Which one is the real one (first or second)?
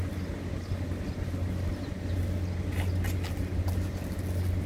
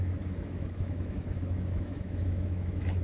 first